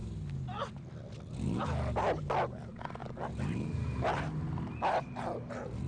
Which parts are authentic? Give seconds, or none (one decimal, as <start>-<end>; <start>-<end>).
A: 0.0-5.9